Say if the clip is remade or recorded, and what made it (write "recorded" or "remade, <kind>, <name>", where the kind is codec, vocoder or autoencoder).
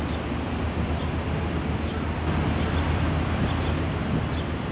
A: recorded